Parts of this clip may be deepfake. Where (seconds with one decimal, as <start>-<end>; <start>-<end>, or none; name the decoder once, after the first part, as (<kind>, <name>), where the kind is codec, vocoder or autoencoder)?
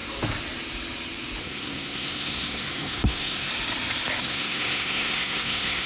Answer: 1.4-3.5 (codec, SNAC); 4.2-5.9